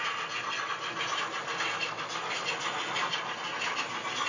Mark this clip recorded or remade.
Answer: recorded